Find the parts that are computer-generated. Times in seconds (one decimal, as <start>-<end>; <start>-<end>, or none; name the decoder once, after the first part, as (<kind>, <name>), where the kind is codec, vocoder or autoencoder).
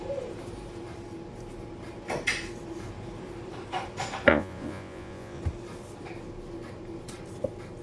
4.3-5.4 (vocoder, Vocos)